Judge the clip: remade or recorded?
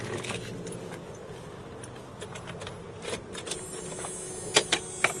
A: recorded